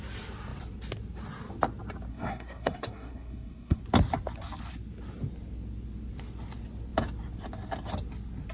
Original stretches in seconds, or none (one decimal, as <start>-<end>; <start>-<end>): 0.0-2.1; 3.8-8.5